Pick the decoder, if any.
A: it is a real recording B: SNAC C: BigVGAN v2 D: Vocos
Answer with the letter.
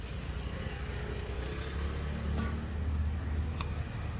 A